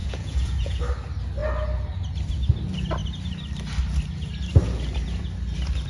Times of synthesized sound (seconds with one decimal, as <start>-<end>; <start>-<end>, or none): 0.0-0.8